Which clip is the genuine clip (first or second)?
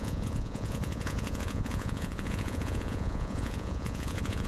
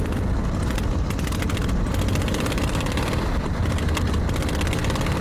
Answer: second